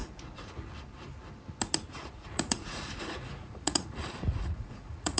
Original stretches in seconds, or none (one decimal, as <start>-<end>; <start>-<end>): 0.0-1.9